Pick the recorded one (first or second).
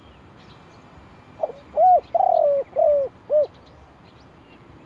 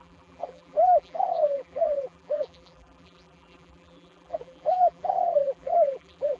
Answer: first